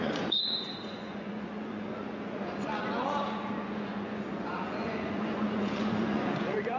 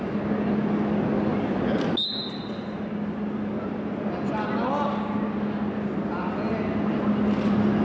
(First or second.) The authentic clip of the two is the second